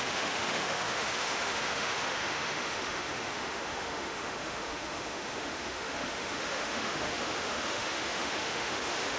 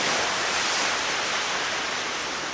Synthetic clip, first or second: first